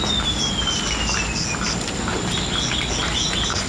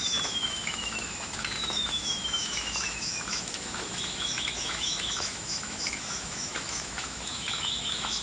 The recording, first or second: first